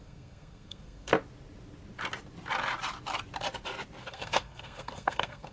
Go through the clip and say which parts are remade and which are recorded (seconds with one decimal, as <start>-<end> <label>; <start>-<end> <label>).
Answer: 0.0-1.1 remade; 1.1-4.0 recorded; 4.0-5.5 remade